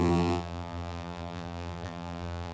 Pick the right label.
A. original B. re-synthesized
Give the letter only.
B